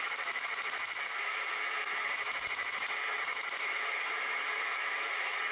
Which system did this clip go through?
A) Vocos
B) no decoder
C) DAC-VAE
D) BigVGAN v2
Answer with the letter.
C